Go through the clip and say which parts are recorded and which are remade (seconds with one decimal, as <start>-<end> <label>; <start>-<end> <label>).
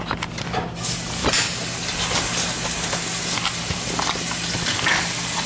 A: 0.0-5.5 recorded